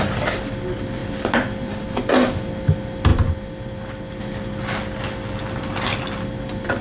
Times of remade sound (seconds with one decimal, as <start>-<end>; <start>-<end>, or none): none